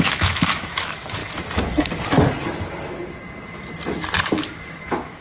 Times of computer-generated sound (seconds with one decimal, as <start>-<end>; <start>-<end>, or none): 0.0-1.2; 4.2-5.2